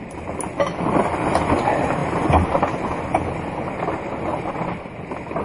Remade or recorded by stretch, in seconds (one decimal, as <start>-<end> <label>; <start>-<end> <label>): 0.0-5.4 recorded